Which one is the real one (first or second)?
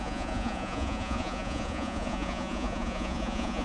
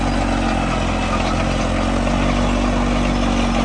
second